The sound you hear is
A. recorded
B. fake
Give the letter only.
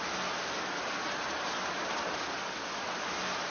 A